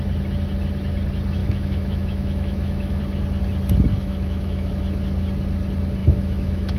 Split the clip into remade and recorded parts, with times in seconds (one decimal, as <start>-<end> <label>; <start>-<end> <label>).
0.0-1.4 recorded; 1.4-3.0 remade; 3.0-3.9 recorded; 3.9-4.7 remade; 4.7-6.0 recorded; 6.0-6.8 remade